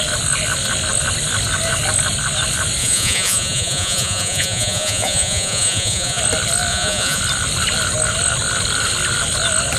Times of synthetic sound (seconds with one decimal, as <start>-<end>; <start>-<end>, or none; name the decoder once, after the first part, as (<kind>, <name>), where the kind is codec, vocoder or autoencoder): 2.8-6.2 (vocoder, Vocos); 6.7-7.2